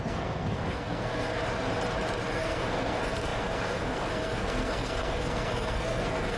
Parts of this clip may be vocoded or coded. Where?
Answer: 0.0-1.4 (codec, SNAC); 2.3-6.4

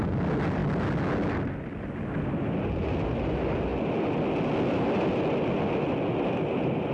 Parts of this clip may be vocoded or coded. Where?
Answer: none

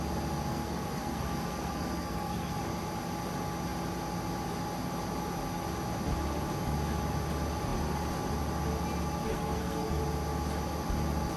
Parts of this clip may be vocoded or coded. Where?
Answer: 0.5-2.6 (codec, SNAC); 9.3-10.0